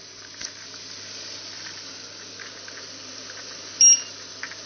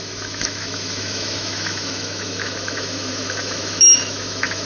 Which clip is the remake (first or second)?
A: second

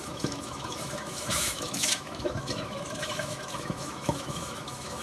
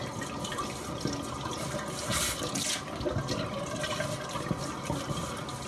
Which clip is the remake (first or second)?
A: first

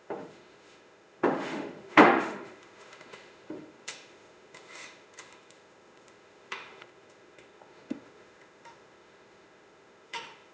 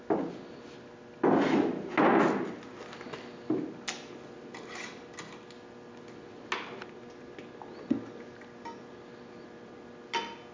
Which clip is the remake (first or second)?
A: first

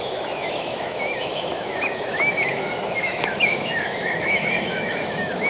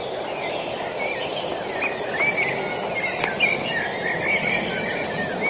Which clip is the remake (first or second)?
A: first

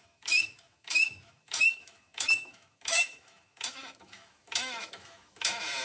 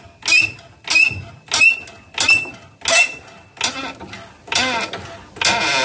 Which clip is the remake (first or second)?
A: first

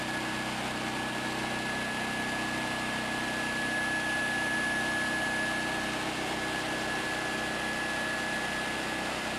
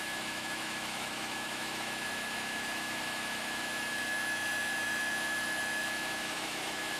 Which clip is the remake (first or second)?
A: second